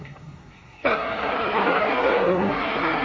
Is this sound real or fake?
fake